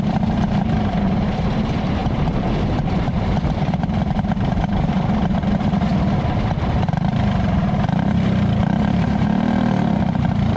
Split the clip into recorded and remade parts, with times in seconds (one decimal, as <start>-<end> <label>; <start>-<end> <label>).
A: 0.0-5.9 remade; 5.9-6.6 recorded; 6.6-10.6 remade